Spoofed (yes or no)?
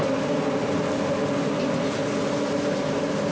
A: no